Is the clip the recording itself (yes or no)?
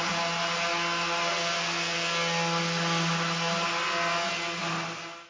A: yes